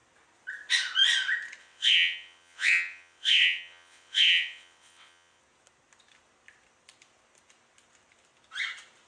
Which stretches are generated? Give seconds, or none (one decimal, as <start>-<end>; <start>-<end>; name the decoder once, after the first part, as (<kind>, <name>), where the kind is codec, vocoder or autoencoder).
1.6-5.4 (vocoder, WaveNeXt)